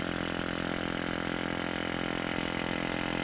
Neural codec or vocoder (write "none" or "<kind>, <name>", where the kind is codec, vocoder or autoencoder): none